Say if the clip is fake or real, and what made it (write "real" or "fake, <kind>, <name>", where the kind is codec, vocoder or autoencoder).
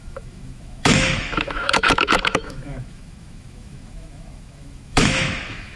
fake, autoencoder, DAC-VAE